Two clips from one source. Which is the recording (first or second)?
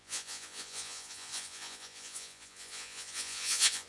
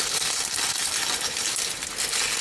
second